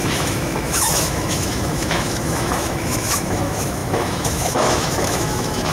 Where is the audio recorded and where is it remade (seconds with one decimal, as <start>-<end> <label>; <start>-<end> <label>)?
0.0-5.7 remade